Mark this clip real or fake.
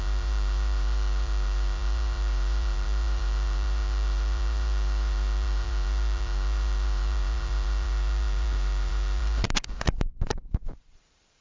fake